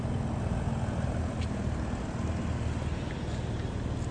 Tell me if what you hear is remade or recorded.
recorded